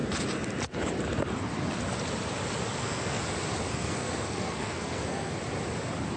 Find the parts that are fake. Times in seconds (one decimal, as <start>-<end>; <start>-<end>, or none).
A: 2.7-3.2; 3.6-5.3